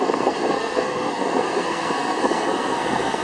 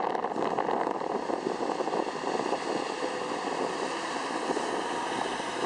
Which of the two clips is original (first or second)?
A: second